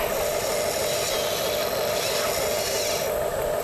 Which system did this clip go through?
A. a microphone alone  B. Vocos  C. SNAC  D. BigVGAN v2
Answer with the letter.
A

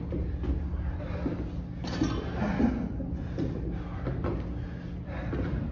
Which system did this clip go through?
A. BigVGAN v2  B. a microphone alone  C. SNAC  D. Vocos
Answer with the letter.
B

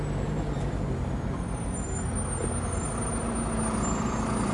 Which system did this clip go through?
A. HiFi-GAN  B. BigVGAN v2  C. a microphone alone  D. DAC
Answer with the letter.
C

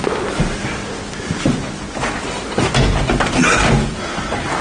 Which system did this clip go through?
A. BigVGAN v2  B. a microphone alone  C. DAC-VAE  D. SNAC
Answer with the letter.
B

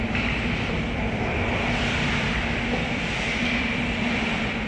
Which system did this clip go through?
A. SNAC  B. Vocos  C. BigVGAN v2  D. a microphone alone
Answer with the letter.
C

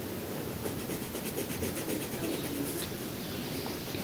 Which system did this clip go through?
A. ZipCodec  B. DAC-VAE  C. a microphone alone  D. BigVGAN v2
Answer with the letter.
C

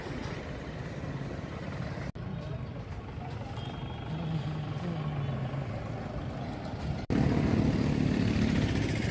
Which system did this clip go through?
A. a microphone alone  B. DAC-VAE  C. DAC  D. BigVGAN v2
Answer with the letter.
A